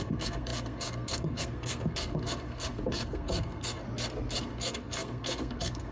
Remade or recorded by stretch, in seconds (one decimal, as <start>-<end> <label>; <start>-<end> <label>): 0.0-3.8 remade; 3.8-4.4 recorded; 4.4-5.9 remade